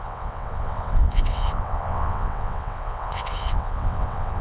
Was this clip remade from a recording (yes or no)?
yes